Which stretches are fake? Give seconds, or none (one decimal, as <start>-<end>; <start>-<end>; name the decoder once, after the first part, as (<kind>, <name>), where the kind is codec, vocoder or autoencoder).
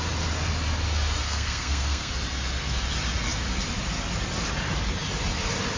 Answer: 1.2-2.1 (codec, SNAC)